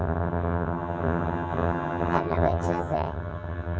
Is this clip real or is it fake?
fake